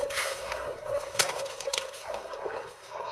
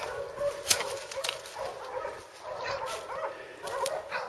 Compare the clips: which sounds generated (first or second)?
first